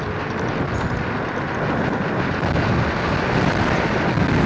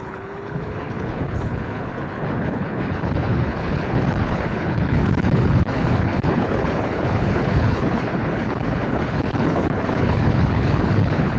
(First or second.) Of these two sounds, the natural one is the first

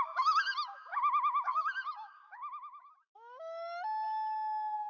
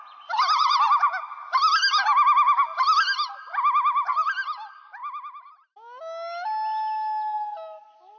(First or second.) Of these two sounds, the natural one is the second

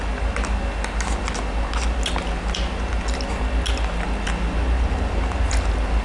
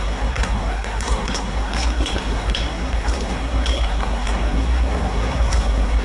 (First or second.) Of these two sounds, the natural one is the first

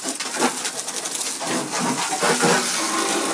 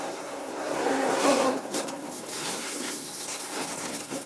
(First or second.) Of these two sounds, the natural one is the first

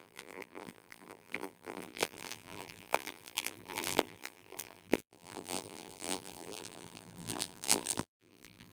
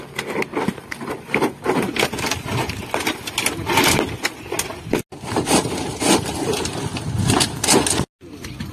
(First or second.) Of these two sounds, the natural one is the second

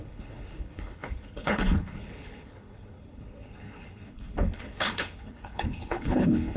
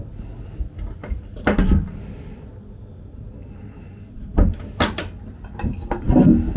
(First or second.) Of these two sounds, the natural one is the second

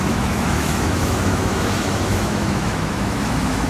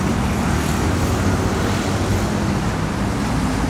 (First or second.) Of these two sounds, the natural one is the second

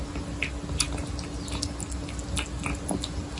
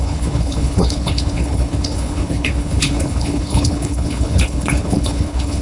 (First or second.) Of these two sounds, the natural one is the first